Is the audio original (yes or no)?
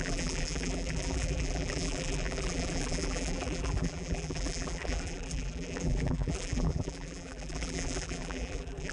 no